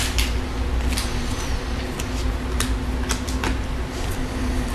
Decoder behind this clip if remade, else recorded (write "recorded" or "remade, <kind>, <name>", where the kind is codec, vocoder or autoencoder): recorded